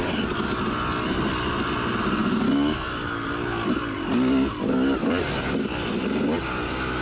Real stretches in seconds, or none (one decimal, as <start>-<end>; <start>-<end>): 0.0-7.0